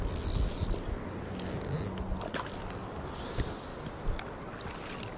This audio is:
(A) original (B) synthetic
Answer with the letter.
A